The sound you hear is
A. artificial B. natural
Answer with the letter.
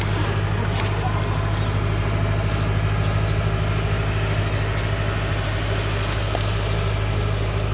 B